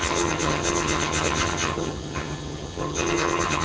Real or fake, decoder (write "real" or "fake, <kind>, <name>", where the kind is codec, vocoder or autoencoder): fake, vocoder, HiFi-GAN